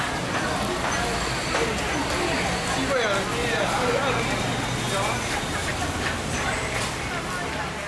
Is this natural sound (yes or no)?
yes